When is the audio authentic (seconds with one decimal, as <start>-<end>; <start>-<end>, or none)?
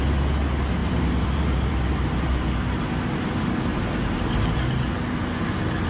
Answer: 0.0-0.8; 3.1-3.7; 4.7-5.9